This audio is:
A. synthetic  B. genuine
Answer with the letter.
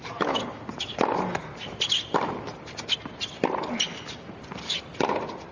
B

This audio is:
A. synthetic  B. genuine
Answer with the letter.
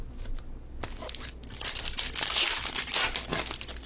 B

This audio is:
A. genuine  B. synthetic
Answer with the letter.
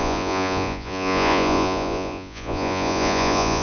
B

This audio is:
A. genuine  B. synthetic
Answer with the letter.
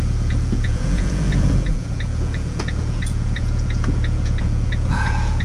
B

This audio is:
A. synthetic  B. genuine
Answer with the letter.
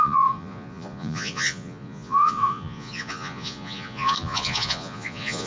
A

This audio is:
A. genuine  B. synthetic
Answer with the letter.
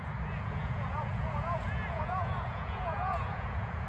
B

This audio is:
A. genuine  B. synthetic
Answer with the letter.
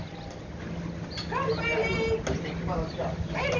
A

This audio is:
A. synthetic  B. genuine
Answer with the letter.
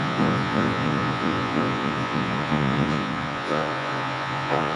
A